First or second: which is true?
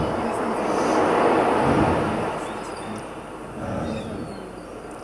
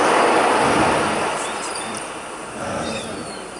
first